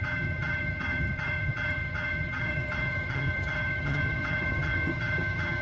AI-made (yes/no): yes